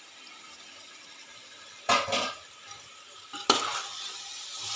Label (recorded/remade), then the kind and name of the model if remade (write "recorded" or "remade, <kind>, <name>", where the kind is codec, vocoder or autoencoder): recorded